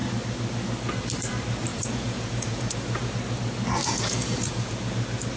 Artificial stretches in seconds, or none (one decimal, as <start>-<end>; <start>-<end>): 1.7-3.1; 3.8-4.9